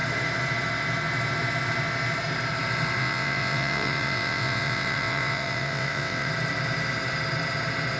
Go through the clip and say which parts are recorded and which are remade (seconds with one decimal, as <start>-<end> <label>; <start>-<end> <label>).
0.0-3.0 recorded; 3.0-6.3 remade; 6.3-8.0 recorded